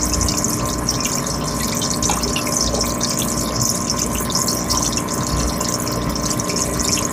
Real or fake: real